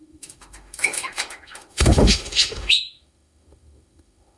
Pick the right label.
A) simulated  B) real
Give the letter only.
A